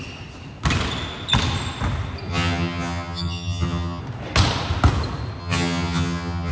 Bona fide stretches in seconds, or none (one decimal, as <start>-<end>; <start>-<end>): 0.0-2.3; 4.0-5.4